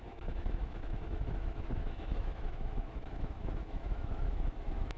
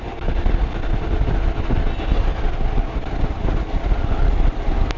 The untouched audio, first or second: second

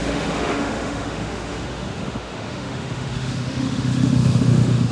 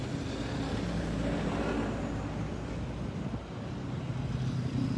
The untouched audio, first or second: second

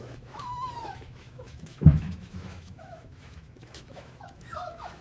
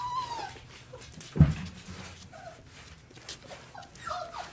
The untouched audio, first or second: second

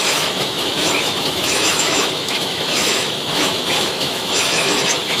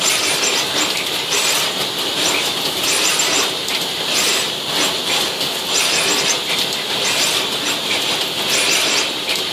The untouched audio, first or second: second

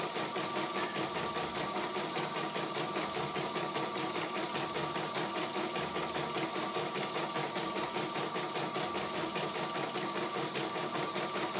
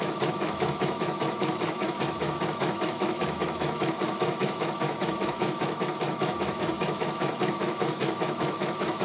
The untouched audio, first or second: first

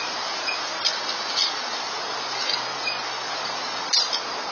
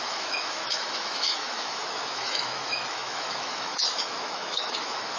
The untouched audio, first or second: first